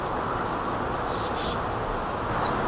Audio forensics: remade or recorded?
recorded